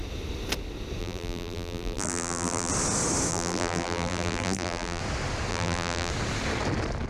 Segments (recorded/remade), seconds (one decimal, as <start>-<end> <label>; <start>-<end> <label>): 0.0-1.0 recorded; 1.0-2.7 remade; 2.7-3.3 recorded; 3.3-5.0 remade; 5.0-5.5 recorded; 5.5-6.1 remade; 6.1-7.1 recorded